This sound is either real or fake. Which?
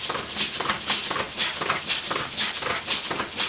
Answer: real